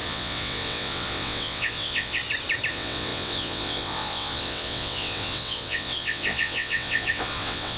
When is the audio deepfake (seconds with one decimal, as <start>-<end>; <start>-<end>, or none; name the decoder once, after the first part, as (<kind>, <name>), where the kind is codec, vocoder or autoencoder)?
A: 0.0-2.2 (vocoder, WaveNeXt); 2.7-7.8